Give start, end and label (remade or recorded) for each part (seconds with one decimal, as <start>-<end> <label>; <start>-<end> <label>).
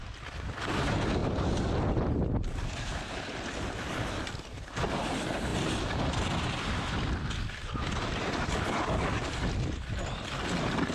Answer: 0.0-10.9 recorded